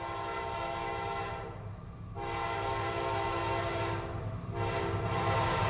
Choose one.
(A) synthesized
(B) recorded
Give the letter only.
B